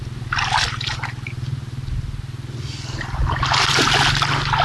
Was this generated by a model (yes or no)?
no